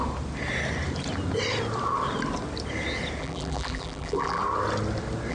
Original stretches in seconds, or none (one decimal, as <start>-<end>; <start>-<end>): 0.0-3.2; 4.4-5.3